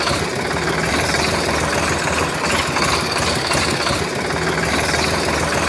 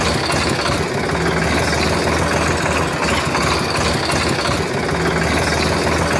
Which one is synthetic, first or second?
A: first